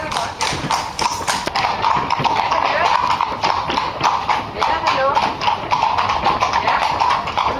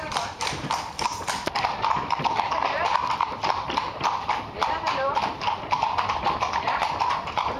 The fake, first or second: second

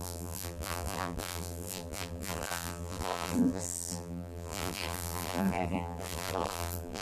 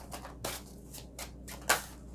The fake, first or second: first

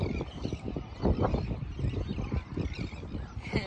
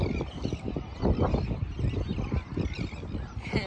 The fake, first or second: first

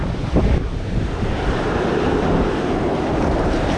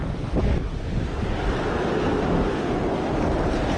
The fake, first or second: first